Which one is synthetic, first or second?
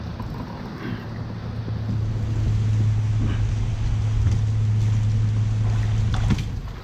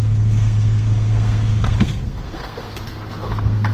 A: second